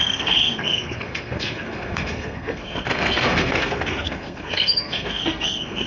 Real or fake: fake